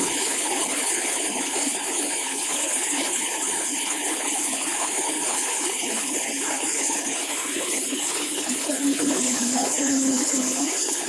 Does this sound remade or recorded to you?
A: remade